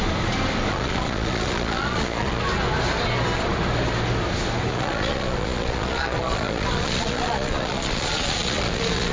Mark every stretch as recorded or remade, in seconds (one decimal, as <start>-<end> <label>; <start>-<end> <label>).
0.0-0.7 recorded; 0.7-2.4 remade; 2.4-4.7 recorded; 4.7-9.1 remade